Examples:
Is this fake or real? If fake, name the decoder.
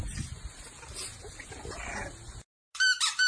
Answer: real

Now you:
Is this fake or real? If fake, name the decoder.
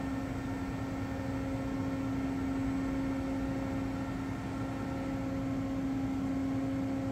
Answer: real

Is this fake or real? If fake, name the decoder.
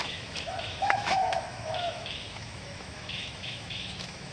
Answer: fake, autoencoder, DAC-VAE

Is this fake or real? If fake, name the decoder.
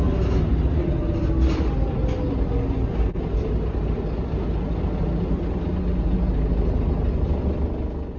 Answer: real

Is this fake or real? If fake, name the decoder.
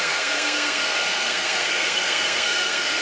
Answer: fake, codec, SNAC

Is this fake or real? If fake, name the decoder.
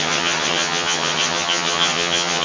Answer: fake, vocoder, HiFi-GAN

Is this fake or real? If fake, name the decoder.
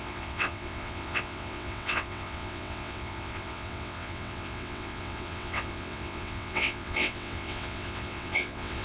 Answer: fake, vocoder, WaveNeXt